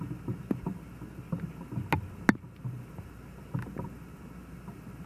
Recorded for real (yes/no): yes